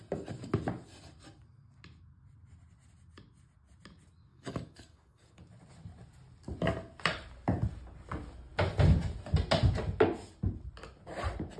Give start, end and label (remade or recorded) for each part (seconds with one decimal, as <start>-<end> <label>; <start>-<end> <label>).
0.0-4.3 recorded; 4.3-5.4 remade; 5.4-11.6 recorded

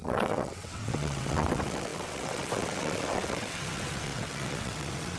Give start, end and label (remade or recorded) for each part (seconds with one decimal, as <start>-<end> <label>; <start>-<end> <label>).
0.0-5.2 remade

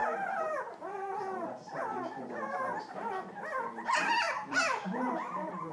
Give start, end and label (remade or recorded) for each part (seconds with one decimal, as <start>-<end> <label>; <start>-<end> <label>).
0.0-5.7 remade